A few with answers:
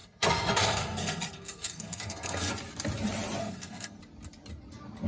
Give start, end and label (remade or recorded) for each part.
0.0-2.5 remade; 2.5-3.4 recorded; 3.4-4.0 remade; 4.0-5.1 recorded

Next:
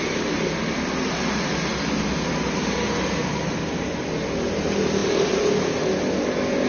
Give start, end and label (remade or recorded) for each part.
0.0-6.7 recorded

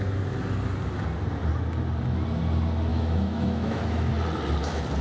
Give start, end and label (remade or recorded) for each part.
0.0-2.9 recorded; 2.9-4.1 remade; 4.1-5.0 recorded

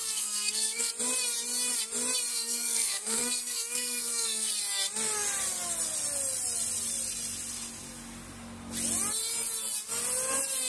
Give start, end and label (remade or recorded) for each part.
0.0-0.9 remade; 0.9-2.3 recorded; 2.3-4.5 remade; 4.5-10.7 recorded

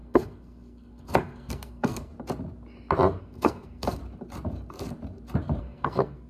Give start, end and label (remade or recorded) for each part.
0.0-2.1 remade; 2.1-3.2 recorded; 3.2-4.0 remade; 4.0-5.6 recorded; 5.6-6.3 remade

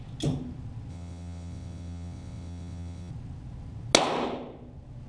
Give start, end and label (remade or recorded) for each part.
0.0-0.9 recorded; 0.9-3.1 remade; 3.1-5.1 recorded